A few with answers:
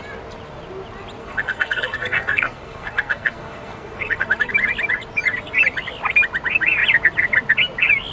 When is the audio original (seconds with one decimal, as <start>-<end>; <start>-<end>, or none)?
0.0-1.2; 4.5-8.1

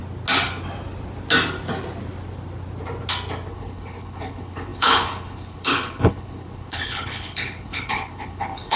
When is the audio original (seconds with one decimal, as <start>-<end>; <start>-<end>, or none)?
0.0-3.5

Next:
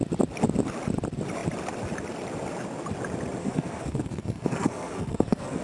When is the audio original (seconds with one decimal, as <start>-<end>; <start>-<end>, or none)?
0.0-3.4

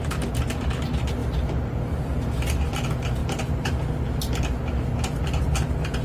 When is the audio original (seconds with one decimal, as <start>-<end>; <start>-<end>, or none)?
0.0-3.2; 3.8-6.0

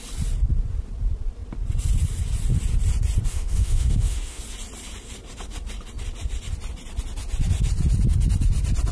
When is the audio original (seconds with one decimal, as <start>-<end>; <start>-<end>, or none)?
0.0-3.3; 4.4-8.9

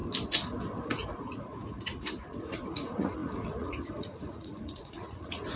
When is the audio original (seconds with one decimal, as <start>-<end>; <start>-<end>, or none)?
0.0-0.8

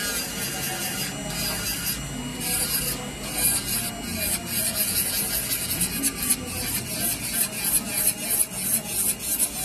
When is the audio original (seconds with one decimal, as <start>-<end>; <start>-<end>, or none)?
0.0-2.3; 3.9-9.6

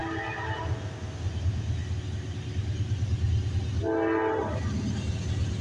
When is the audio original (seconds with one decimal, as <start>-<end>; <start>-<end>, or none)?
1.8-5.6